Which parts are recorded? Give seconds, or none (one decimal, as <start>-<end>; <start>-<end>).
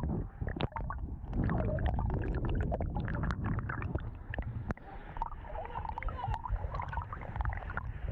0.5-4.3; 5.0-5.5